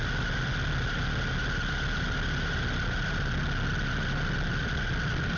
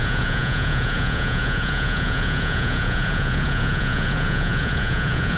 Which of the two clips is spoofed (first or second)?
second